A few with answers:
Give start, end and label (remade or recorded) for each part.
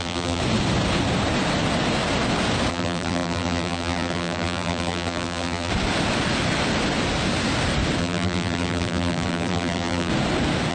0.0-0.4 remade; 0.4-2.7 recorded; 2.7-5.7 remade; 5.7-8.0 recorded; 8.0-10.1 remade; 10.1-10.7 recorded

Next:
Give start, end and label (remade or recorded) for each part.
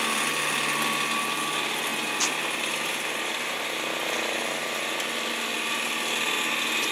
0.0-6.9 recorded